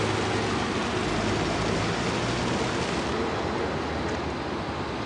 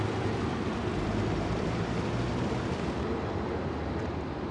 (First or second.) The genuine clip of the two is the first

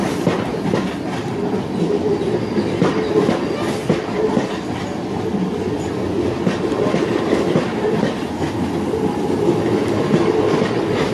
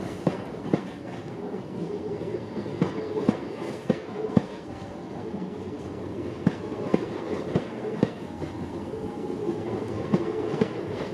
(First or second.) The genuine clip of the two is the first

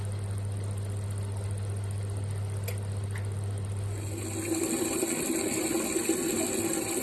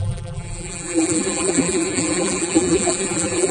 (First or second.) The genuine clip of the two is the first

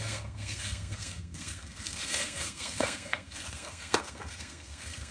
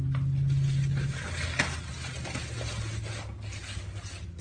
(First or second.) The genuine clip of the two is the second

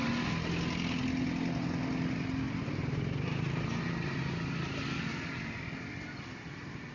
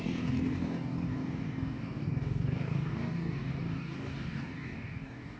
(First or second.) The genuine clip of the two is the first